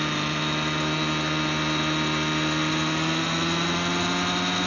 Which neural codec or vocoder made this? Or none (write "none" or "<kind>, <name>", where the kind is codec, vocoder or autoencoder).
none